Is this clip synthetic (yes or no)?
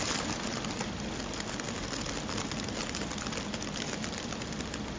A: no